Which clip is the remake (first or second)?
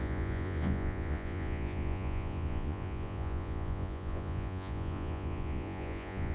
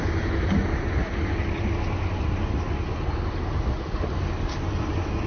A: first